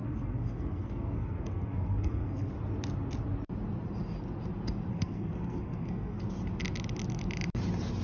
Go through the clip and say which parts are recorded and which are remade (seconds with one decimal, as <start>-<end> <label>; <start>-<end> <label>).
0.0-2.5 remade; 2.5-4.9 recorded; 4.9-6.2 remade; 6.2-8.0 recorded